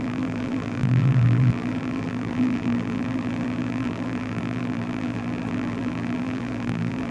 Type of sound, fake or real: fake